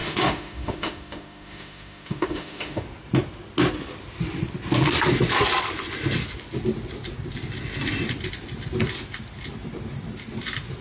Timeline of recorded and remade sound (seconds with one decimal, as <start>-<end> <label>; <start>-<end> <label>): 0.0-2.8 remade; 2.8-10.8 recorded